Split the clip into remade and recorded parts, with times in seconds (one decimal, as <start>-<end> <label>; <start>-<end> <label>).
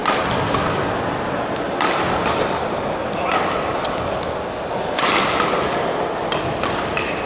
0.0-1.0 recorded; 1.0-7.3 remade